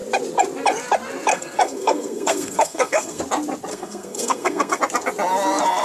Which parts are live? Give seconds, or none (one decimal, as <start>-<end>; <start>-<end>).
0.0-1.3; 3.2-3.7; 4.8-5.8